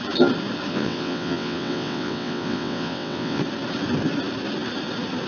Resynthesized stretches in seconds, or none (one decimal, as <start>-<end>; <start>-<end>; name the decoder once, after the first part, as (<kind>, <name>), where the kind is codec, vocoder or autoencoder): 0.7-3.4 (vocoder, WaveNeXt)